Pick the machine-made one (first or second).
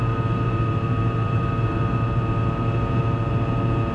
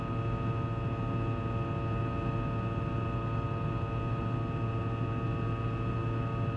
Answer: first